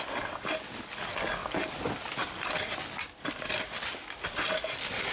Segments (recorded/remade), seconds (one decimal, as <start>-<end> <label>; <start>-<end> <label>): 0.0-5.1 recorded